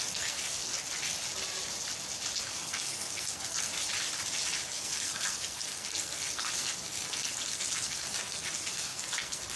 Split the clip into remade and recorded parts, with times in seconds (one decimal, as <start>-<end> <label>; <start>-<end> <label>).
0.0-0.7 remade; 0.7-2.4 recorded; 2.4-3.7 remade; 3.7-4.7 recorded; 4.7-9.6 remade